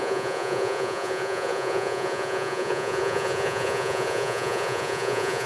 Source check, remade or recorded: remade